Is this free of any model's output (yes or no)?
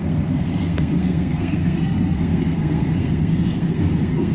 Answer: no